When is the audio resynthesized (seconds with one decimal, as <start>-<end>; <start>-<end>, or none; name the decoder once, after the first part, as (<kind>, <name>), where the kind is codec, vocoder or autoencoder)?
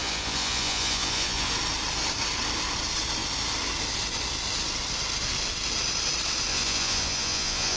0.0-1.5 (vocoder, Vocos); 6.5-7.8